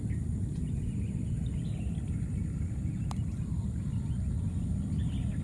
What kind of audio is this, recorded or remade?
recorded